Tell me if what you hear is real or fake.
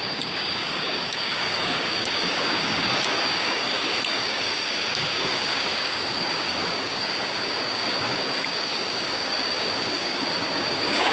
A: fake